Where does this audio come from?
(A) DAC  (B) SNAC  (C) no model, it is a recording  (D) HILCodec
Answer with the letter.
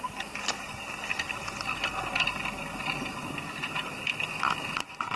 C